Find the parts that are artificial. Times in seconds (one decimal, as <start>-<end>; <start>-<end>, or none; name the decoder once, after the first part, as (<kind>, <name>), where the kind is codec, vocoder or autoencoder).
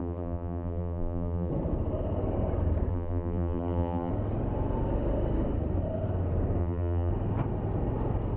0.0-1.5 (vocoder, BigVGAN v2); 2.9-4.1; 6.6-7.1